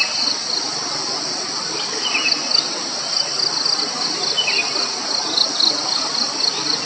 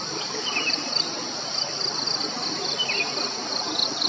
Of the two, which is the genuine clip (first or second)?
first